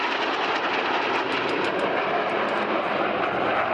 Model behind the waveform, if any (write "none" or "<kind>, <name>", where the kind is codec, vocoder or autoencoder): none